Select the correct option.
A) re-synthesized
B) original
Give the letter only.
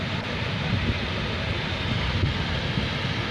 B